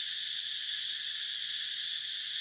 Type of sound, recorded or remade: recorded